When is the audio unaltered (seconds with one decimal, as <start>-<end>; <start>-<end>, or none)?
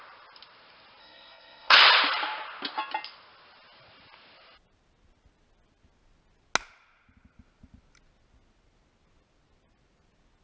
0.0-1.0; 1.8-10.4